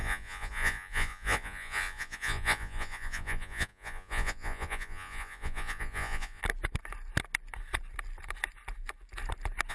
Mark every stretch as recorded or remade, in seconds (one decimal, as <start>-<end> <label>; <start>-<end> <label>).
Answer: 0.0-6.4 remade; 6.4-9.7 recorded